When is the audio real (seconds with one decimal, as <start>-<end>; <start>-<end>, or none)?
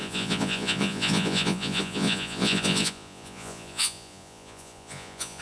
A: none